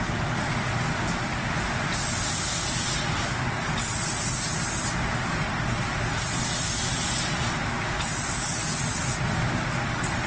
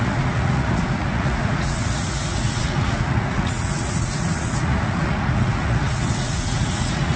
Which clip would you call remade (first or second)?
second